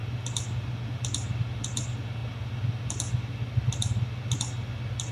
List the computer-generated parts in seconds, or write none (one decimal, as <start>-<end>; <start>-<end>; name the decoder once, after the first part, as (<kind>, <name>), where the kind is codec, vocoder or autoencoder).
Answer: none